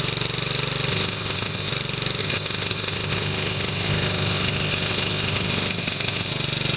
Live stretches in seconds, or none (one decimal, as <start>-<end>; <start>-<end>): 0.0-0.9; 1.7-2.2; 6.3-6.8